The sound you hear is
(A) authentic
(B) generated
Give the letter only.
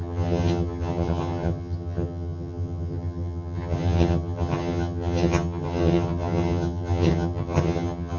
B